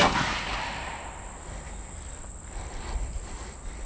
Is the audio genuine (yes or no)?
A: yes